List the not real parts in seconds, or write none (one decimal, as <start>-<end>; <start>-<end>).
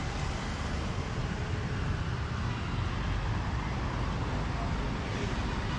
none